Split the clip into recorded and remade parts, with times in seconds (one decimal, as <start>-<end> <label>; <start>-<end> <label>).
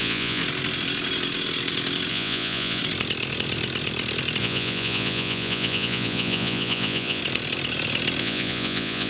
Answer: 0.0-0.4 remade; 0.4-2.1 recorded; 2.1-2.8 remade; 2.8-4.4 recorded; 4.4-7.2 remade; 7.2-8.2 recorded; 8.2-9.1 remade